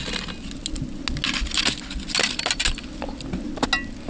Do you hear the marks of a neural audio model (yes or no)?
no